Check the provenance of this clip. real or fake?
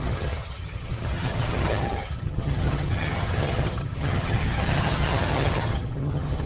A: fake